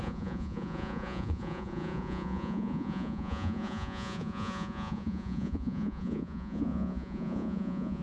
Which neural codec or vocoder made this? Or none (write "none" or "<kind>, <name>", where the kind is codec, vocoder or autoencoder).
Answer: vocoder, Vocos